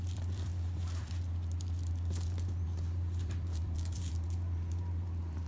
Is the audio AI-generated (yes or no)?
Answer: yes